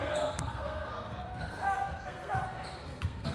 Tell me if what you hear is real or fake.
fake